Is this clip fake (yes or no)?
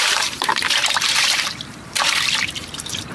yes